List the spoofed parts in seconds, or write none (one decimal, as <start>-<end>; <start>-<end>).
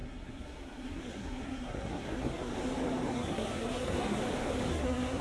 0.0-2.5; 3.1-4.2; 4.7-5.2